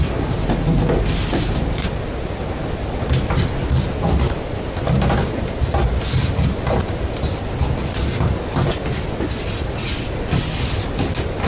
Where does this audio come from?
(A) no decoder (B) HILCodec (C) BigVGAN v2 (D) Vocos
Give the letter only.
A